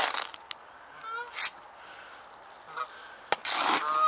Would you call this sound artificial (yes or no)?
no